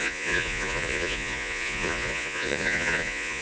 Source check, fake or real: fake